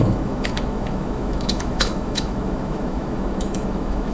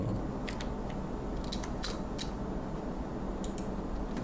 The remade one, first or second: first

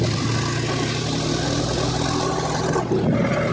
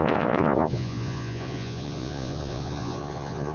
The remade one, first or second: second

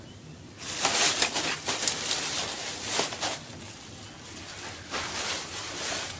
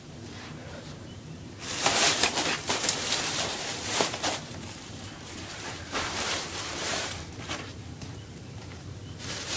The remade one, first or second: second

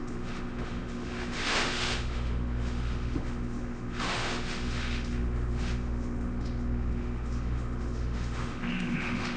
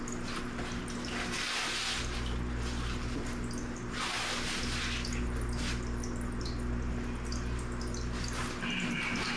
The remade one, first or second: first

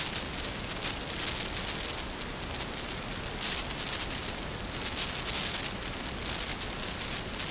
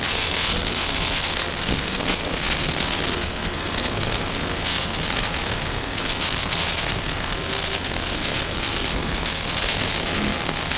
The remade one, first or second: second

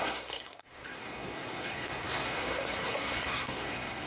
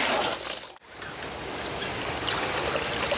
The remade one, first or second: first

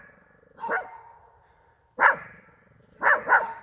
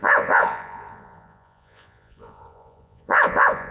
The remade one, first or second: second